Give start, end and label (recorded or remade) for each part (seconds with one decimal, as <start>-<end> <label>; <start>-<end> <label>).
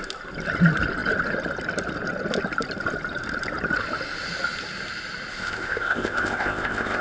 0.0-5.3 recorded; 5.3-7.0 remade